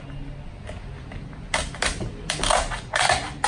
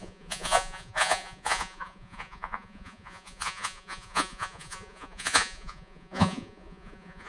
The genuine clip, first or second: first